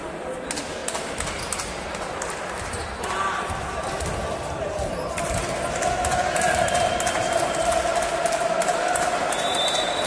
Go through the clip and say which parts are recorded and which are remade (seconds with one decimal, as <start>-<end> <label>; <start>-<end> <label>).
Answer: 0.0-10.1 recorded